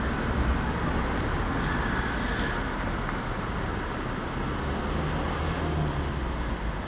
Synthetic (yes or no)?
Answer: no